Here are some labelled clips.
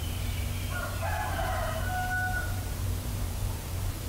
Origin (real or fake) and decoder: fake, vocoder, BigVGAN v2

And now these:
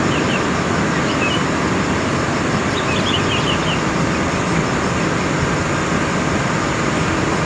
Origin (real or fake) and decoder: real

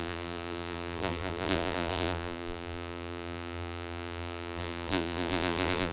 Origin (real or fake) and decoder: fake, vocoder, BigVGAN v2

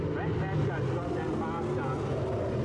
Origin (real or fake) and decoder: real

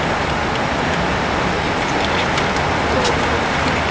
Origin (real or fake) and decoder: real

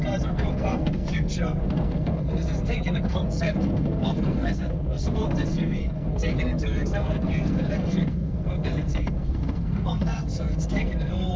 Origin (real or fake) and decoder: fake, codec, SNAC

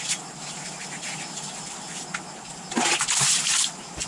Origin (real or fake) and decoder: real